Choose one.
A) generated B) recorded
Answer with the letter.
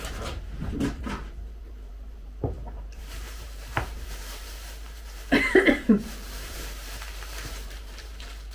A